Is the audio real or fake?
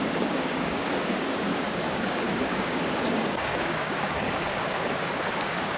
fake